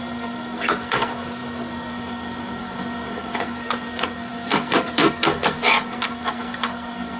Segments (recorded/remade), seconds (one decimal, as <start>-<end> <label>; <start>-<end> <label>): 0.0-7.2 remade